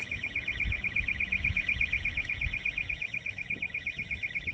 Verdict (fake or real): fake